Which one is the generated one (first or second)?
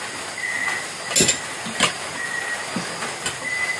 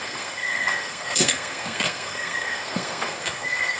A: second